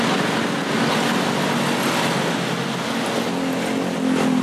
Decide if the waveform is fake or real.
real